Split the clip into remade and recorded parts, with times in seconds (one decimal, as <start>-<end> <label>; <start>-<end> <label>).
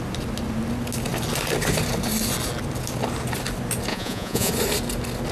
0.0-3.9 recorded; 3.9-4.5 remade; 4.5-5.3 recorded